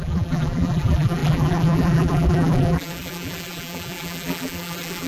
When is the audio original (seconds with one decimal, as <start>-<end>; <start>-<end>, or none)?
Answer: none